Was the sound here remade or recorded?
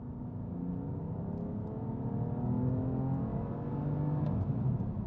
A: recorded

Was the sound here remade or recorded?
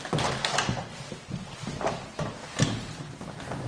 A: recorded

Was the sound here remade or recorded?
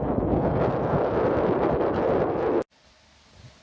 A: recorded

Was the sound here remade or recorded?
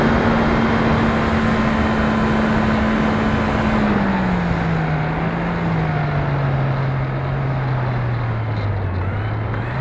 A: recorded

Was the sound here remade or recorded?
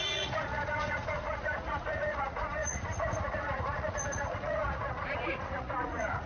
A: remade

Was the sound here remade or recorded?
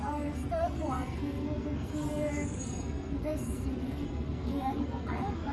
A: remade